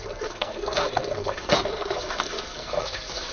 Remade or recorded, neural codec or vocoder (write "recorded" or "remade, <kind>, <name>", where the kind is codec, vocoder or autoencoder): remade, codec, SNAC